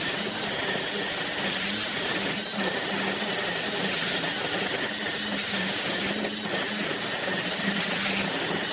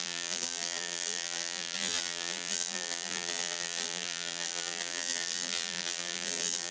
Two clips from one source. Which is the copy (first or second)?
second